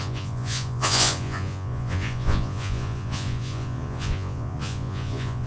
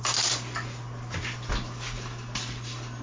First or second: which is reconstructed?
first